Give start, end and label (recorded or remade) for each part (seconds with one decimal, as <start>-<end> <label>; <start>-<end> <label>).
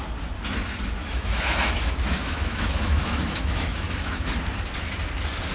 0.0-1.0 recorded; 1.0-4.3 remade; 4.3-5.5 recorded